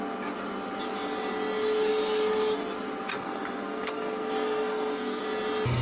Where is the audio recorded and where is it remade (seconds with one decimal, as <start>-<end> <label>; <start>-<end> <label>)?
0.0-3.1 recorded; 3.1-5.2 remade; 5.2-5.8 recorded